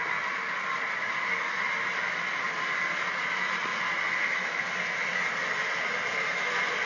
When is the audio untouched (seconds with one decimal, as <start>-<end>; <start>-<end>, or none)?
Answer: 0.0-6.9